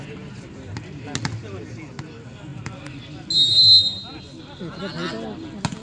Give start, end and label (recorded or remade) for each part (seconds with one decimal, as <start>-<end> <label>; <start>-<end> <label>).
0.0-5.8 recorded